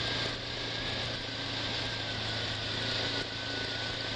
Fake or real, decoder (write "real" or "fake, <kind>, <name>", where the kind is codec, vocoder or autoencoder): real